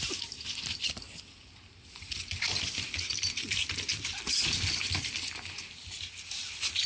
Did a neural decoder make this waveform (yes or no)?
no